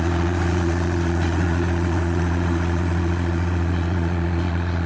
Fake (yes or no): yes